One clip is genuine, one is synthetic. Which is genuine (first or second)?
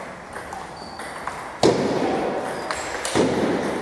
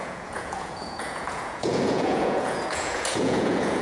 first